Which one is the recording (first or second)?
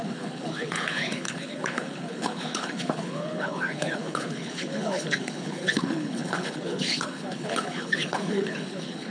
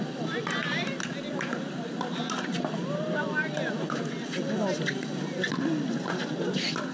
second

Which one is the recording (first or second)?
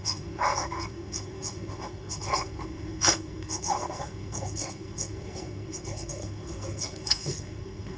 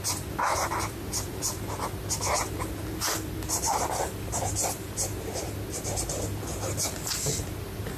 second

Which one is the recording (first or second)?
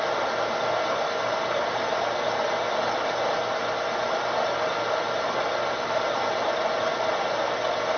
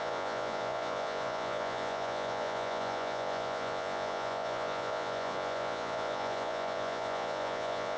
first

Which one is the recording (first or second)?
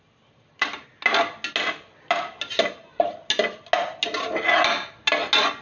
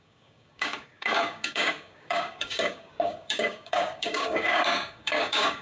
first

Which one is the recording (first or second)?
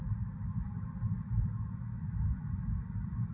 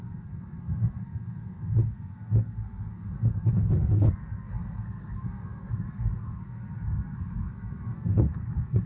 first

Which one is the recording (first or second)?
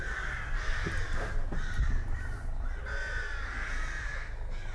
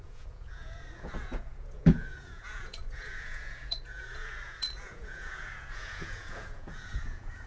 first